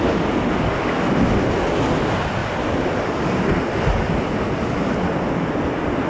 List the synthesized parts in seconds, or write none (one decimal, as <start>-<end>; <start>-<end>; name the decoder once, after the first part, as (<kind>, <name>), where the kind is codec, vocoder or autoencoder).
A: 2.4-6.1 (vocoder, BigVGAN v2)